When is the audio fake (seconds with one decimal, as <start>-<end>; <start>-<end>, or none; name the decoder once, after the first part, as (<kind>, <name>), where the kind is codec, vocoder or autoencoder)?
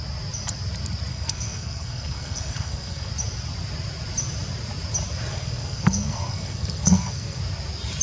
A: 1.1-3.1 (codec, SNAC); 5.3-7.4